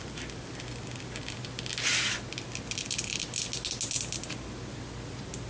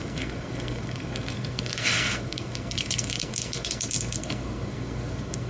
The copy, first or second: second